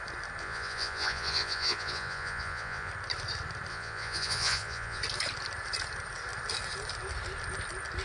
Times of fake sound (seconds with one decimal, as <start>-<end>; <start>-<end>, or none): 0.4-2.9; 3.7-5.0